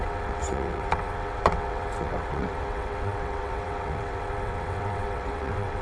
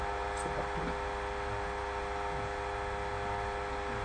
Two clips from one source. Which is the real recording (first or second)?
second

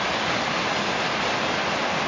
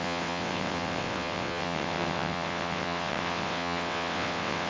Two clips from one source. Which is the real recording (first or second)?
first